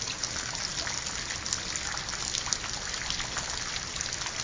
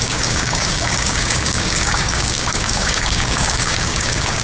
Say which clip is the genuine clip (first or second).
first